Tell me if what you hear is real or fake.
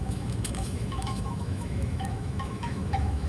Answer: fake